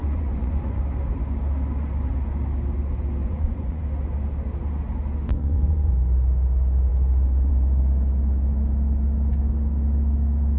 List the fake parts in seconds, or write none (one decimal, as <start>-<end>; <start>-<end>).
0.0-0.8; 3.2-3.8; 5.3-5.9